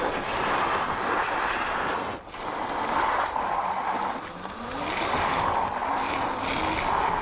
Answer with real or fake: real